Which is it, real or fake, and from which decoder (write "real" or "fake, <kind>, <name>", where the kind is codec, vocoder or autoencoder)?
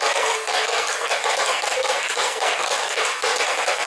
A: fake, codec, SNAC